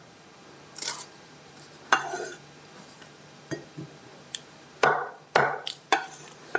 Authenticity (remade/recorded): remade